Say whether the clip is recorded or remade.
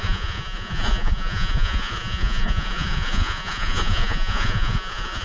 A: remade